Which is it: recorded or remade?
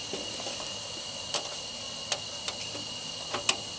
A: recorded